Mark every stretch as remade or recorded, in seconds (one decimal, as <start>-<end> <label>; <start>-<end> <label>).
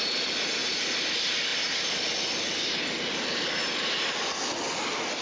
0.0-5.2 recorded